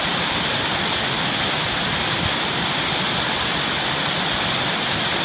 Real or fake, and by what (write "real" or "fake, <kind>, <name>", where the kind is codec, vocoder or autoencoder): real